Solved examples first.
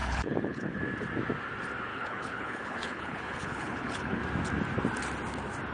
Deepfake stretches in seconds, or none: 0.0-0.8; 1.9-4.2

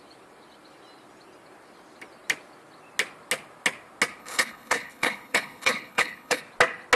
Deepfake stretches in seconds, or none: 4.2-6.4